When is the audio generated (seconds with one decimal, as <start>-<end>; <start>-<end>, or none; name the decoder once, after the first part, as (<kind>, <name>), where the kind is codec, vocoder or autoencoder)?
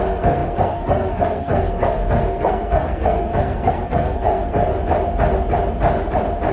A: 0.0-4.7 (codec, SNAC)